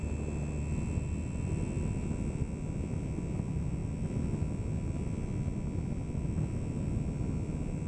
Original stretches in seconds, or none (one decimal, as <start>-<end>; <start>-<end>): 0.0-7.9